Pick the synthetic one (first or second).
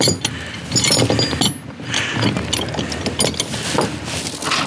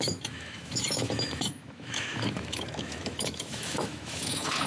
second